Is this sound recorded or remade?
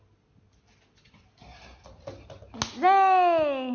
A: recorded